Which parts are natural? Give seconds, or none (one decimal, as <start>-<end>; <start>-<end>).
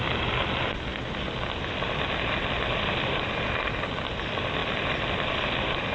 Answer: 0.0-5.9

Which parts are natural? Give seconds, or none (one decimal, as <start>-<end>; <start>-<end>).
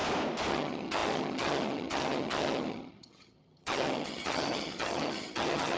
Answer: 0.0-0.5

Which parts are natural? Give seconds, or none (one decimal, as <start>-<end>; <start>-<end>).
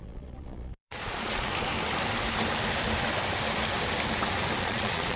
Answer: 1.5-4.6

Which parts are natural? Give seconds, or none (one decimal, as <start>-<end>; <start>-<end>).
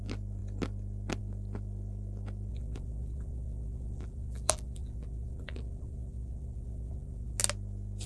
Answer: 0.0-2.5; 7.4-8.1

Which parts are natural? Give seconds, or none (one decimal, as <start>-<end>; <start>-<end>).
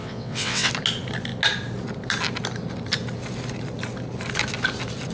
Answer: 0.7-5.1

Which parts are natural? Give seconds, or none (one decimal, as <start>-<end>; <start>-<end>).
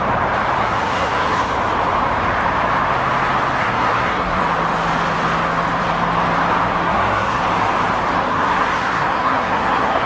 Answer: 0.0-0.6; 1.5-3.6; 4.4-6.7; 7.4-8.3